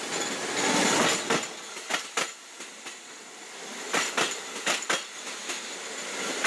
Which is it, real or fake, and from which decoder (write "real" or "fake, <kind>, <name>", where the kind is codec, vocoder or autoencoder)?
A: real